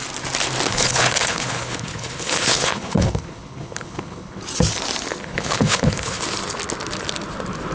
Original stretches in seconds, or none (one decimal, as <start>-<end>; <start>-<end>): 0.0-0.7; 4.4-5.2; 6.2-7.7